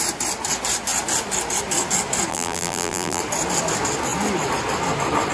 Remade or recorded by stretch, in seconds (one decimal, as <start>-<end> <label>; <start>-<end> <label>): 0.0-2.3 recorded; 2.3-3.2 remade; 3.2-5.3 recorded